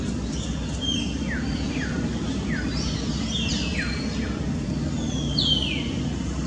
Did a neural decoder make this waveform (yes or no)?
no